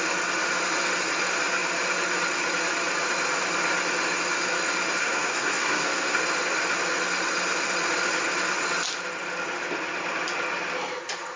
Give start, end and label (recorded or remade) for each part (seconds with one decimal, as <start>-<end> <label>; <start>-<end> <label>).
0.0-5.0 recorded; 5.0-6.2 remade; 6.2-11.4 recorded